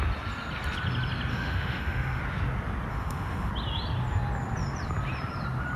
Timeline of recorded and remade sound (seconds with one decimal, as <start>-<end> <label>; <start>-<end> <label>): 0.0-1.3 recorded; 1.3-2.2 remade; 2.2-2.9 recorded; 2.9-3.5 remade; 3.5-5.8 recorded